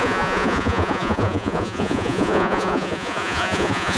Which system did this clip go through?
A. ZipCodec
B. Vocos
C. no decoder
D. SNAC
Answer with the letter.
B